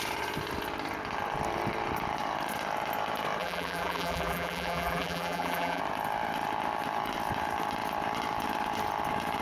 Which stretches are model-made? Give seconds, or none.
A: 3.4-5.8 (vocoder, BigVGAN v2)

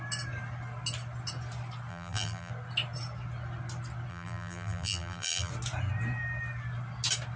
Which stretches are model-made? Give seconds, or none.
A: 1.9-2.5 (vocoder, BigVGAN v2); 4.1-5.5

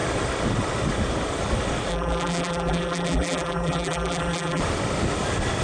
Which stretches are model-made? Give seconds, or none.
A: 1.9-4.6 (vocoder, BigVGAN v2)

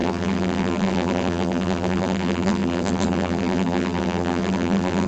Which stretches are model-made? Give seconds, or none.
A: 0.0-5.1 (vocoder, BigVGAN v2)